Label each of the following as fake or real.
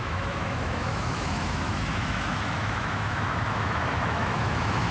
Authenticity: fake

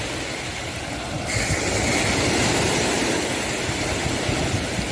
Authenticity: real